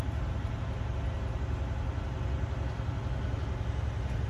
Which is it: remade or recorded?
recorded